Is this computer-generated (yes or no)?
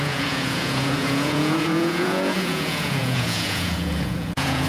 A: yes